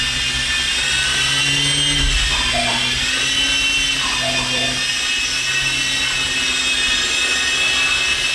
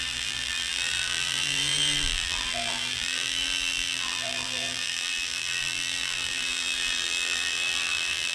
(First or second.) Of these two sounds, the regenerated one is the second